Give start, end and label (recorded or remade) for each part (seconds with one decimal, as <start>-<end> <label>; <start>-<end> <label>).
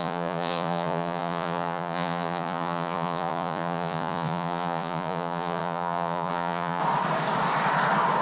0.0-6.8 remade; 6.8-8.2 recorded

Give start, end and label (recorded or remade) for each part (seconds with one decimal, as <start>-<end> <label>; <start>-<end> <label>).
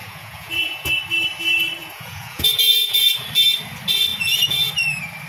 0.0-1.0 remade; 1.0-1.8 recorded; 1.8-3.1 remade; 3.1-4.1 recorded; 4.1-4.7 remade; 4.7-5.3 recorded